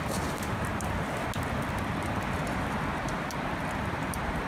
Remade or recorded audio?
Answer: recorded